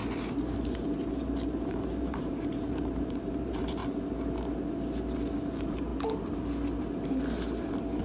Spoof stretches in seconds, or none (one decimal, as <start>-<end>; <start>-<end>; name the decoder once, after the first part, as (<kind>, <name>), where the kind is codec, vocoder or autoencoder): 1.1-3.8 (vocoder, BigVGAN v2); 5.5-5.9